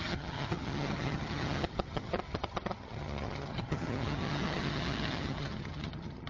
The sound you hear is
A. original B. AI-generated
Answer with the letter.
B